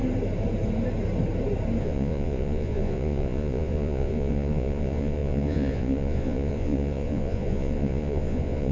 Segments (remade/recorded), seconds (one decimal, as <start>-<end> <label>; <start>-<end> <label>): 0.0-1.8 recorded; 1.8-8.7 remade